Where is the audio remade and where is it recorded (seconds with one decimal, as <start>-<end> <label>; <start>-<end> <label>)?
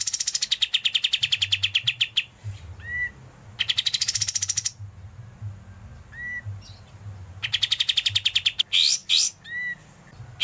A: 0.0-10.4 recorded